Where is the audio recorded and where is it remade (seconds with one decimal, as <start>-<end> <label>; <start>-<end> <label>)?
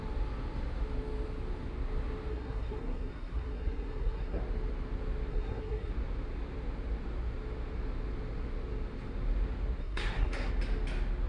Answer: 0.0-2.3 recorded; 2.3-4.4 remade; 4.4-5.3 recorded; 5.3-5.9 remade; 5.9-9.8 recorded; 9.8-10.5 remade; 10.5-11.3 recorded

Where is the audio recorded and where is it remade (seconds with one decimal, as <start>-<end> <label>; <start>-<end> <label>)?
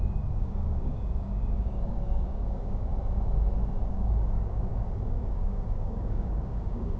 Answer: 0.0-2.9 remade; 2.9-3.8 recorded; 3.8-7.0 remade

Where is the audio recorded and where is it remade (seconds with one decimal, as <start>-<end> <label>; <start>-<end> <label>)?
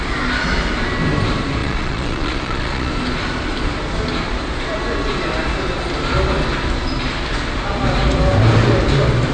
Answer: 0.0-1.6 recorded; 1.6-2.9 remade; 2.9-9.3 recorded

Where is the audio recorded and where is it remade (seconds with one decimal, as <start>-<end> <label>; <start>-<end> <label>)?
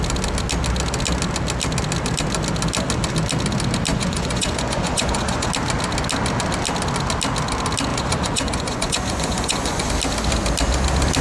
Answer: 0.0-3.9 recorded; 3.9-5.5 remade; 5.5-7.9 recorded; 7.9-9.9 remade; 9.9-11.2 recorded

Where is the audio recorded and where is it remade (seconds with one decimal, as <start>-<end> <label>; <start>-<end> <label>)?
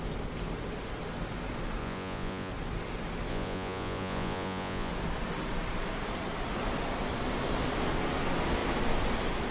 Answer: 0.0-1.8 recorded; 1.8-2.5 remade; 2.5-3.3 recorded; 3.3-4.9 remade; 4.9-9.5 recorded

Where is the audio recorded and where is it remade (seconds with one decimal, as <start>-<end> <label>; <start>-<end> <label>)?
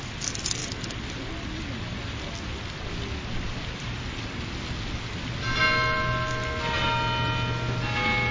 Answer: 0.0-8.3 recorded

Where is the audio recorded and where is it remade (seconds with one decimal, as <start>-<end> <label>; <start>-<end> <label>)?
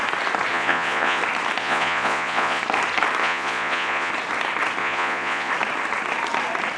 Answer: 0.0-0.5 recorded; 0.5-1.2 remade; 1.2-1.6 recorded; 1.6-2.6 remade; 2.6-3.2 recorded; 3.2-4.1 remade; 4.1-4.8 recorded; 4.8-5.5 remade; 5.5-6.8 recorded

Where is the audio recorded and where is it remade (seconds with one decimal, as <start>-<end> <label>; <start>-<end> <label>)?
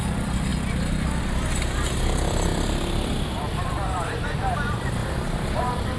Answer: 0.0-0.5 remade; 0.5-1.2 recorded; 1.2-2.5 remade; 2.5-3.7 recorded; 3.7-5.0 remade; 5.0-5.6 recorded; 5.6-6.0 remade